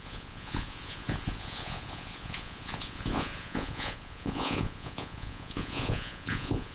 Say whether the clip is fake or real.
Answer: fake